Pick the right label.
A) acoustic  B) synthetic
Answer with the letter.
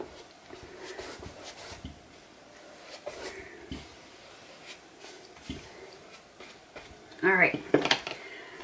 A